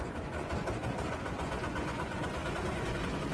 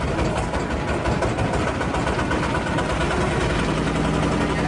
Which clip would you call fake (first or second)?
first